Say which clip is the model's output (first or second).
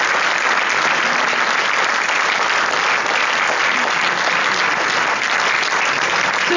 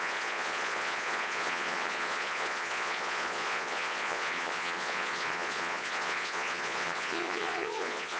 second